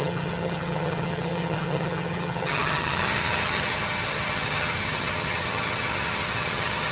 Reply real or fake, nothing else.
fake